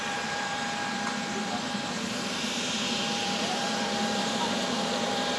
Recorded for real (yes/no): no